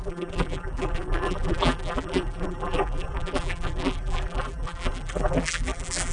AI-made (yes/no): yes